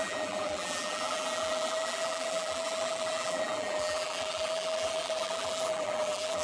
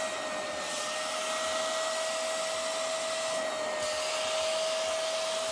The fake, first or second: first